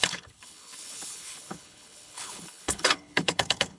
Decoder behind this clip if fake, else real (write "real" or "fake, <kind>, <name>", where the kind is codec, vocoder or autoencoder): fake, codec, HILCodec